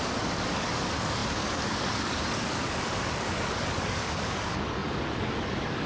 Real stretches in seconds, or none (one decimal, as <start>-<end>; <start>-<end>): none